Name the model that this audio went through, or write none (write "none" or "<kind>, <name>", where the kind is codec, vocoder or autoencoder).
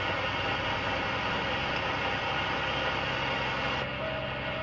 none